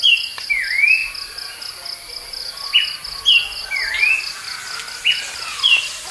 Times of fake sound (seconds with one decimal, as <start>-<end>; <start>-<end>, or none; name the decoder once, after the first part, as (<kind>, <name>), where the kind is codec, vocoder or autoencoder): none